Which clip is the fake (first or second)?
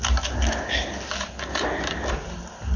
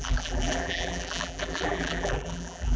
second